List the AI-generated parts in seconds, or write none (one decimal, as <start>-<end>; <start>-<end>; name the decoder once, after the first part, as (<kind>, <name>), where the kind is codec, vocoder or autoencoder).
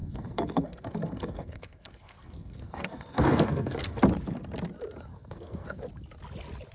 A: 0.0-4.0 (codec, SNAC); 5.1-5.8